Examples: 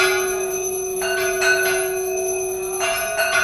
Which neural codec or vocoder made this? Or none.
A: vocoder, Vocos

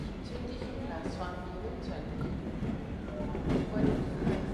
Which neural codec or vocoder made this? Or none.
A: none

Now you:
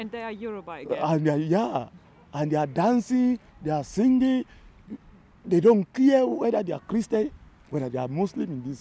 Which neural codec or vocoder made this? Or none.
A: none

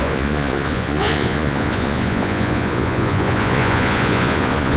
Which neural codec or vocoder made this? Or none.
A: vocoder, Vocos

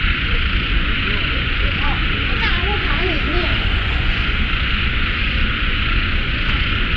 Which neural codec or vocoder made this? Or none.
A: vocoder, Vocos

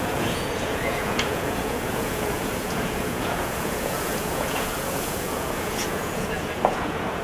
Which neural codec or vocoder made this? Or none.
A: vocoder, Vocos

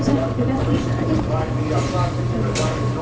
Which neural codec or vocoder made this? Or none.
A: none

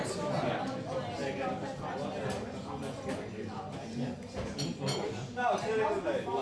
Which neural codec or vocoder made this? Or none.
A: none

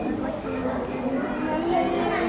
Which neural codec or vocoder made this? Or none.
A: none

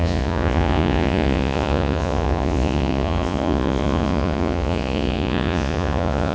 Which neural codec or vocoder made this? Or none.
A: vocoder, Vocos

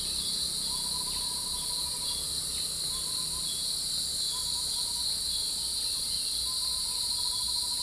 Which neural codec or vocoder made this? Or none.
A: none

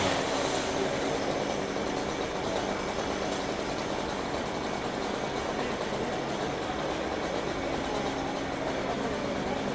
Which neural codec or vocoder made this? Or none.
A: none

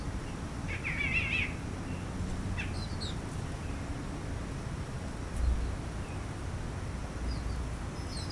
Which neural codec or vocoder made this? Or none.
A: none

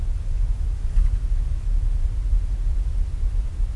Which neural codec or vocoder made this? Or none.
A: none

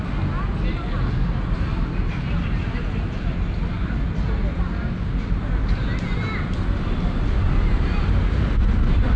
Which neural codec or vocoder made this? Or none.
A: none